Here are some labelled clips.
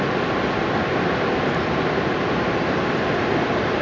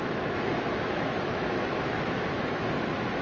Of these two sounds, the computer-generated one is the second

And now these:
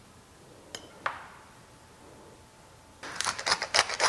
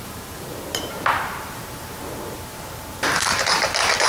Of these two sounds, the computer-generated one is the second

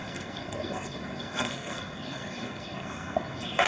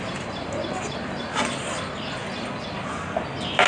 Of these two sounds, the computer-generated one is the first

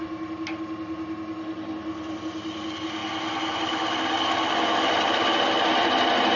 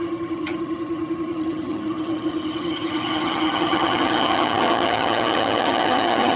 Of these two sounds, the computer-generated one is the second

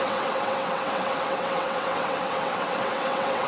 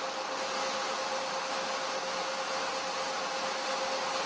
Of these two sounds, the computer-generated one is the first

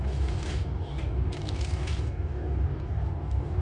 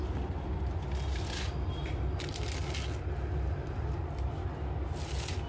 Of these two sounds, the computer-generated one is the first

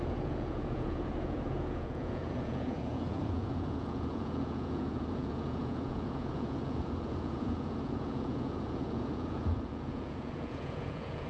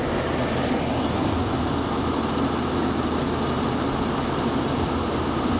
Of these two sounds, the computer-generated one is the first